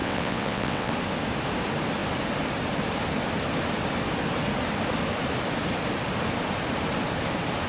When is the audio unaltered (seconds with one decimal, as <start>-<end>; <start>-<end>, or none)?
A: 0.9-7.7